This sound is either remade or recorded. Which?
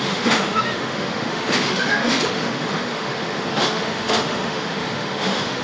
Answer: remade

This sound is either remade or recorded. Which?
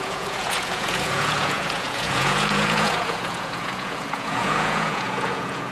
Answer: remade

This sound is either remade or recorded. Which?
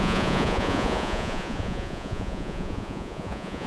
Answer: remade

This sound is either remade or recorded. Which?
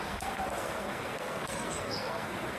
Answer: remade